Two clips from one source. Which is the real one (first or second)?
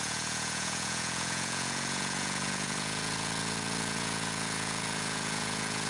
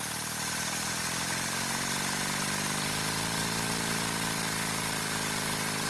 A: second